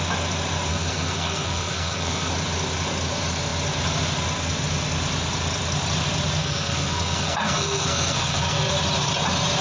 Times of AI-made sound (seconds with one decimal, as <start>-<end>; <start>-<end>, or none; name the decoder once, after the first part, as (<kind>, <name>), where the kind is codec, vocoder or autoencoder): 0.7-2.3 (codec, SNAC); 6.4-8.7